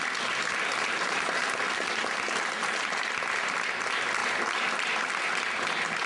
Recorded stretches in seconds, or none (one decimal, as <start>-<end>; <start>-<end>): 0.0-6.1

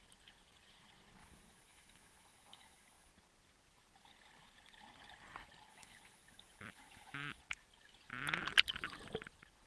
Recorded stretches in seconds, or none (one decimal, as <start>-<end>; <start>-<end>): 0.0-1.2; 3.1-5.7; 7.4-9.7

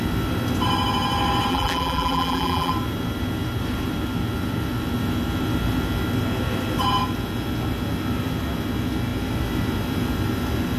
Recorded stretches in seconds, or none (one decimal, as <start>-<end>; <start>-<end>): 0.0-1.5; 2.7-10.8

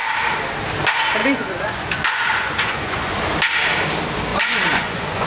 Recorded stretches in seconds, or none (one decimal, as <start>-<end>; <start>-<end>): 0.0-1.2; 3.1-4.3

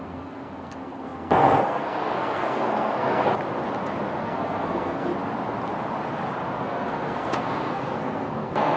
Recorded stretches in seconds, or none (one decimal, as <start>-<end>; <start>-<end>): 3.3-4.2; 5.1-6.6

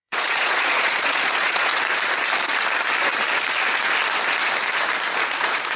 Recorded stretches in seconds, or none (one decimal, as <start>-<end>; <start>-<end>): 1.7-5.2